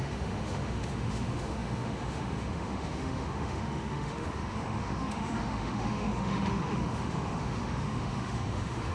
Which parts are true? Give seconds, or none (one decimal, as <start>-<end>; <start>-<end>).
none